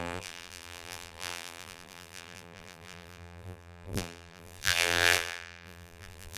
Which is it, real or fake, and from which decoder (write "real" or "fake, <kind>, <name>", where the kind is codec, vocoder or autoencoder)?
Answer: fake, vocoder, BigVGAN v2